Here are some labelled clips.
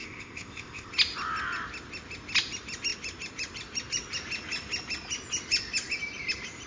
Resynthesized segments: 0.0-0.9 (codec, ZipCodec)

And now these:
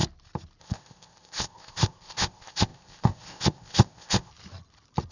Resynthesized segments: 0.6-4.3 (codec, ZipCodec)

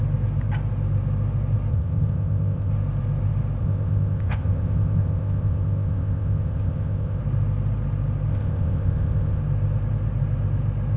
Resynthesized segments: 1.7-2.7 (codec, ZipCodec); 3.6-7.2; 8.3-9.4

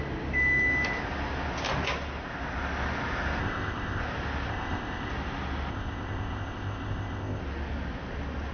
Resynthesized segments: 3.4-4.0 (codec, ZipCodec); 4.5-5.1; 5.7-7.4